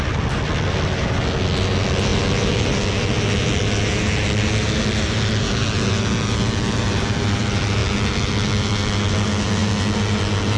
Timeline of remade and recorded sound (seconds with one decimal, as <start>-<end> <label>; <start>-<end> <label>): 0.0-10.6 recorded